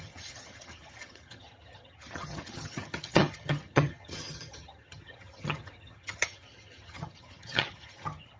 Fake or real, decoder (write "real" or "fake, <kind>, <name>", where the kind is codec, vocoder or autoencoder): fake, vocoder, HiFi-GAN